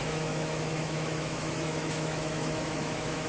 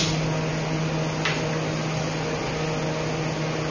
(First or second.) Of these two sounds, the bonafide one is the second